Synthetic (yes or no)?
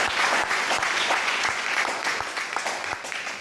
yes